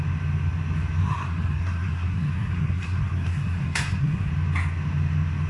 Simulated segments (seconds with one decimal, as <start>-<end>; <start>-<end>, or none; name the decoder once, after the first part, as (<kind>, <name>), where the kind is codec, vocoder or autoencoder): 1.0-4.3 (codec, SNAC)